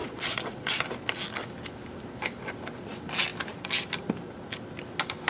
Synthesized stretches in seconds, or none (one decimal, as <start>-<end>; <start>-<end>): 0.0-0.8